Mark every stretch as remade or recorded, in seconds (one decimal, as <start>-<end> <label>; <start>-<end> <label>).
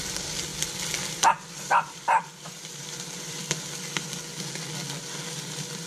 0.0-0.5 recorded; 0.5-3.6 remade; 3.6-5.9 recorded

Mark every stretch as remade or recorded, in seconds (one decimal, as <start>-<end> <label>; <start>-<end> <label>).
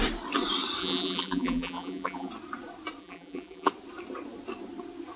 0.0-0.8 recorded; 0.8-2.3 remade; 2.3-3.0 recorded; 3.0-3.7 remade; 3.7-5.2 recorded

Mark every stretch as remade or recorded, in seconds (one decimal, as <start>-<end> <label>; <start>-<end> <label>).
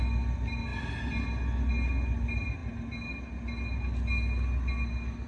0.0-5.3 recorded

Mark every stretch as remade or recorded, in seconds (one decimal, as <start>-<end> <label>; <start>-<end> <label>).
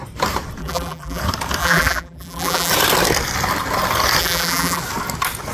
0.0-0.6 recorded; 0.6-1.2 remade; 1.2-1.6 recorded; 1.6-2.7 remade; 2.7-4.2 recorded; 4.2-4.8 remade; 4.8-5.5 recorded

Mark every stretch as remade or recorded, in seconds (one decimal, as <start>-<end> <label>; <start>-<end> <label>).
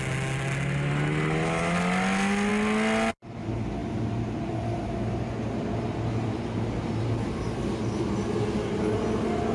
0.0-9.5 recorded